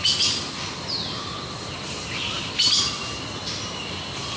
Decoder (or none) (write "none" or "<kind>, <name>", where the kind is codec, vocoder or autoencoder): none